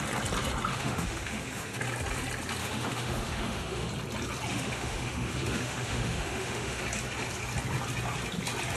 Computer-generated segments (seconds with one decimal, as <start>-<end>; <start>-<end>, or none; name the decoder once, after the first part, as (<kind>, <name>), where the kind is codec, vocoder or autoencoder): 0.7-1.8 (autoencoder, DAC-VAE); 2.6-3.9; 4.5-6.8